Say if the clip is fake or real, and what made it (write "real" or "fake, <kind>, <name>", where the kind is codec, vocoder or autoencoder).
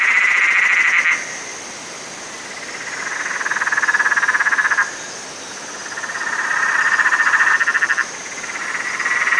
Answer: real